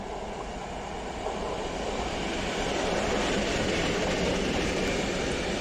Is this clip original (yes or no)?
yes